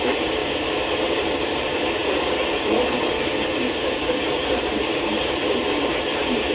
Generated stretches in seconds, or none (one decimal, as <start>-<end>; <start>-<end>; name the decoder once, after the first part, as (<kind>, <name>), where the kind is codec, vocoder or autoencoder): 0.0-0.4 (vocoder, BigVGAN v2); 1.1-6.5